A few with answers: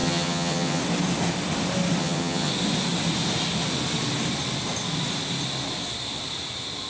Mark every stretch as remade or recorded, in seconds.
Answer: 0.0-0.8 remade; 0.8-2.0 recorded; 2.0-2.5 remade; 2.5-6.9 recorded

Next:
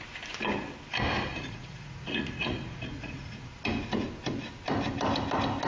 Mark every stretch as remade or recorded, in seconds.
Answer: 0.0-1.3 recorded; 1.3-3.6 remade; 3.6-5.7 recorded

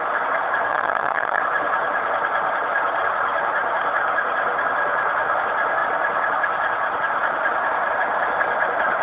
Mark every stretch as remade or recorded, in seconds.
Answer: 0.0-0.7 recorded; 0.7-1.4 remade; 1.4-9.0 recorded

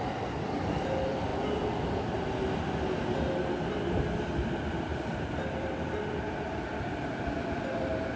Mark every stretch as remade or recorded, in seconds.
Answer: 0.0-1.3 remade; 1.3-3.8 recorded; 3.8-8.2 remade